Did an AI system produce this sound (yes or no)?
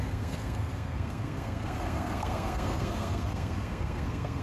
yes